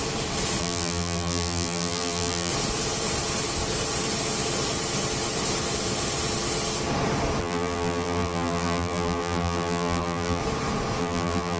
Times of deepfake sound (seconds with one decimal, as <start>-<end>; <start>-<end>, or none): 0.6-2.5; 7.4-10.4; 11.0-11.6